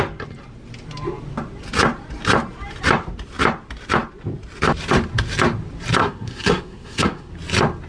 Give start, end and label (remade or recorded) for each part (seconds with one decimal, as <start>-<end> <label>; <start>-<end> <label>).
0.0-6.0 recorded; 6.0-7.3 remade; 7.3-7.9 recorded